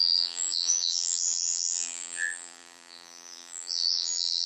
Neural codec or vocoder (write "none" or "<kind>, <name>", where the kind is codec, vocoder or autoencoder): vocoder, BigVGAN v2